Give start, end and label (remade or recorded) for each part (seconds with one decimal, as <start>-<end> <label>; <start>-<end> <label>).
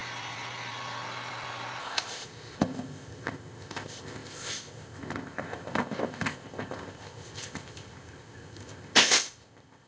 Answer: 0.0-1.8 recorded; 1.8-9.9 remade